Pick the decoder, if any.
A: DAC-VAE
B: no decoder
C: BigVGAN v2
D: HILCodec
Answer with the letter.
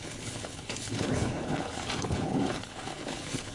D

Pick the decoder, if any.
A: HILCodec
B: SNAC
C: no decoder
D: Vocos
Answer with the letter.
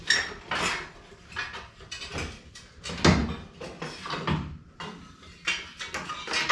C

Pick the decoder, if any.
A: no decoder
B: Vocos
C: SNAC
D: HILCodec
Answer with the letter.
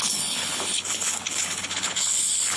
D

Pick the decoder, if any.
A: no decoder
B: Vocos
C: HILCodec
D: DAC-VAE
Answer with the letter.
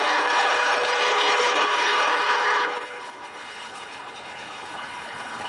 C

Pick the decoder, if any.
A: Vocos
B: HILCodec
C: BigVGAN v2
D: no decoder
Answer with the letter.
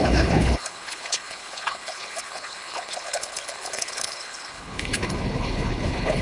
B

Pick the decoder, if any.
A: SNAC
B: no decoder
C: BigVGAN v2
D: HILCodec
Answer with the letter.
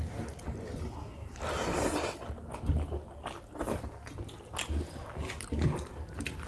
B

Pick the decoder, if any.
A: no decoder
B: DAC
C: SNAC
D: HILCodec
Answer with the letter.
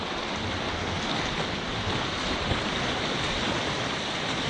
A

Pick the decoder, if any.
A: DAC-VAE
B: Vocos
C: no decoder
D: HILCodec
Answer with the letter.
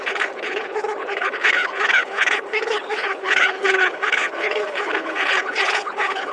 D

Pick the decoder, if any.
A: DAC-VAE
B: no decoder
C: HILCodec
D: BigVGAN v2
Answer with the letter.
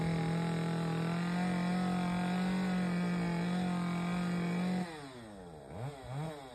B